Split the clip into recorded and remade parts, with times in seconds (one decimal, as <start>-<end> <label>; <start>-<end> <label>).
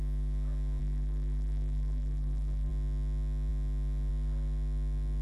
0.0-0.8 recorded; 0.8-2.7 remade; 2.7-5.2 recorded